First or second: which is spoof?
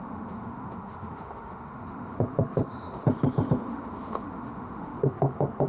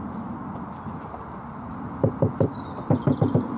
first